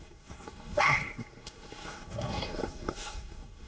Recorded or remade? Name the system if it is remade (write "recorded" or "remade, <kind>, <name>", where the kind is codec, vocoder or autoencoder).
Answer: remade, codec, SNAC